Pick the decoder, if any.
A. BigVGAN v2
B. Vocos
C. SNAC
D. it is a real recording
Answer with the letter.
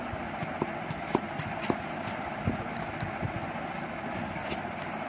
D